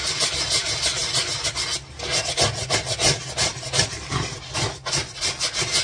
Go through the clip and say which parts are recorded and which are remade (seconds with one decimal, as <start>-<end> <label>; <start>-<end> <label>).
0.0-5.8 recorded

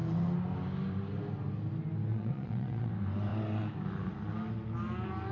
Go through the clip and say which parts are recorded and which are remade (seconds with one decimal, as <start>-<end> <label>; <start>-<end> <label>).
0.0-2.1 recorded; 2.1-2.9 remade; 2.9-5.3 recorded

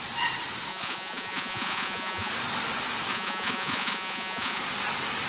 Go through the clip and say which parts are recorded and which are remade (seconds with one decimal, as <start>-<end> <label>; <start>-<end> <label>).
0.0-0.7 recorded; 0.7-2.3 remade; 2.3-3.1 recorded; 3.1-4.6 remade; 4.6-5.3 recorded

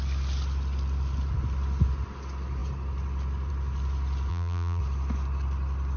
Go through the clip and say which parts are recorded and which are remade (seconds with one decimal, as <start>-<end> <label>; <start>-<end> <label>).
0.0-4.3 recorded; 4.3-4.8 remade; 4.8-6.0 recorded

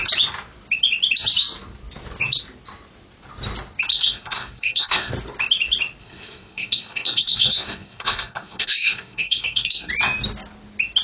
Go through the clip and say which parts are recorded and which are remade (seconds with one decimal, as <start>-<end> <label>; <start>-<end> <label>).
0.0-3.9 recorded; 3.9-5.1 remade; 5.1-6.0 recorded; 6.0-9.9 remade; 9.9-11.0 recorded

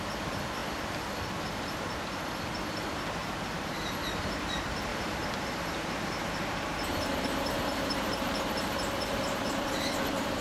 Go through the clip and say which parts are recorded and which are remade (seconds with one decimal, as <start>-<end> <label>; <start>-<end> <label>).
0.0-3.2 recorded; 3.2-3.9 remade; 3.9-4.9 recorded; 4.9-10.4 remade

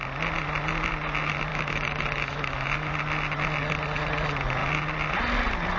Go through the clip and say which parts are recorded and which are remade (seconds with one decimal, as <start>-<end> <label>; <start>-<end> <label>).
0.0-1.5 recorded; 1.5-2.9 remade; 2.9-5.8 recorded